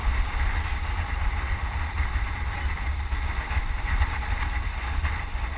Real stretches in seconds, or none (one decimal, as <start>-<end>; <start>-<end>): 0.0-5.6